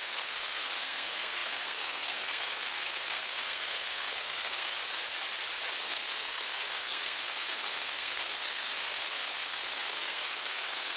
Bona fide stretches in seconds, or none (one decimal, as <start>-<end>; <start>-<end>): 4.8-5.8